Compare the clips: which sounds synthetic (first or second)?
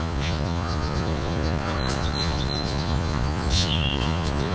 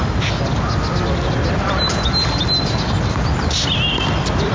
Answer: first